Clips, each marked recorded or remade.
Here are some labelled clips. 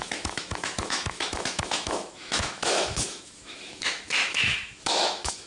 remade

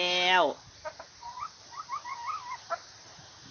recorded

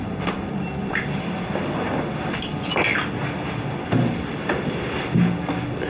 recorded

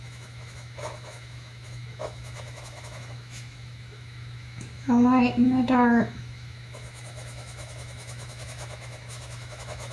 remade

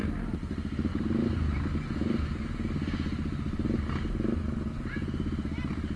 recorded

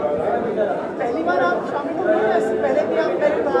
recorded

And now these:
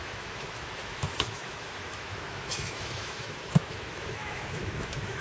remade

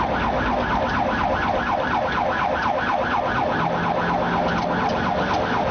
recorded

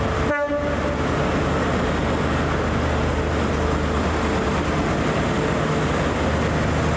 recorded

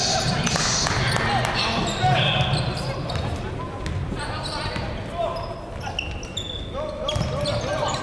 recorded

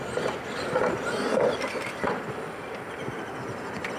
recorded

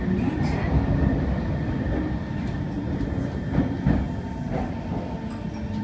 recorded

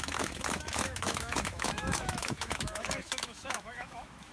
remade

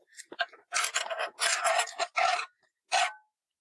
recorded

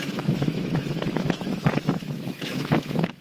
remade